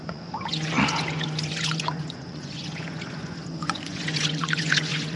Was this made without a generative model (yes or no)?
no